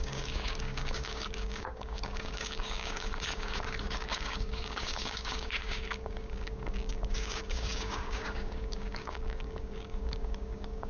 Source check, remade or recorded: remade